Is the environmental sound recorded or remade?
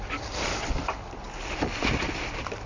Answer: recorded